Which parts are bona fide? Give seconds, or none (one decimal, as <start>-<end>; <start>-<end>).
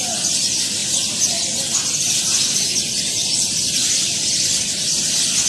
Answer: 0.0-5.5